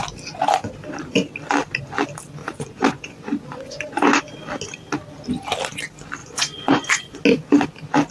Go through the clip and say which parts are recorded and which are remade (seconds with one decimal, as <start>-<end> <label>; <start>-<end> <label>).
0.0-2.4 recorded; 2.4-4.2 remade; 4.2-6.2 recorded; 6.2-7.2 remade; 7.2-8.1 recorded